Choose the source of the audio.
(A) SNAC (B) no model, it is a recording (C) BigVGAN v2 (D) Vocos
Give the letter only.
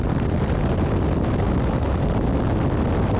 B